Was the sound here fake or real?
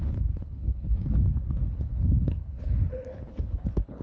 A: fake